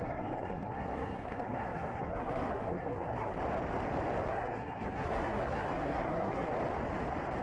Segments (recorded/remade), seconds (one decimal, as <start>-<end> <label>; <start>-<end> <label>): 0.0-3.3 remade; 3.3-4.3 recorded; 4.3-6.5 remade; 6.5-7.4 recorded